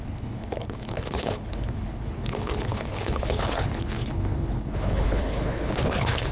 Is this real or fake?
fake